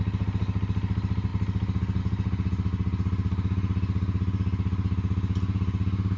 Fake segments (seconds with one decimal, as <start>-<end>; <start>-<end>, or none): none